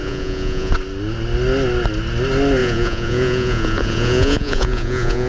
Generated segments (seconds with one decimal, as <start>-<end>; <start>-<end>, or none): 0.0-0.7; 2.6-5.3